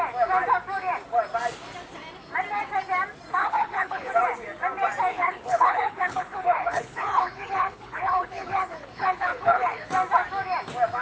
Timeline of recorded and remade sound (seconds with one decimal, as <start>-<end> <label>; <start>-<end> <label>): 0.0-3.4 recorded; 3.4-4.1 remade; 4.1-5.1 recorded; 5.1-9.9 remade; 9.9-11.0 recorded